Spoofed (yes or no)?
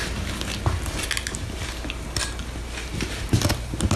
no